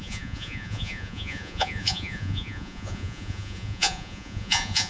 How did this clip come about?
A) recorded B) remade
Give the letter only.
B